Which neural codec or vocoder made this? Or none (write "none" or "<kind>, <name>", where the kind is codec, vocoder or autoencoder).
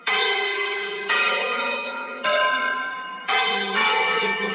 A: vocoder, HiFi-GAN